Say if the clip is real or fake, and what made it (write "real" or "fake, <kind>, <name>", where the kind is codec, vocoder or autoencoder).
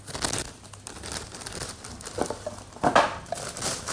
real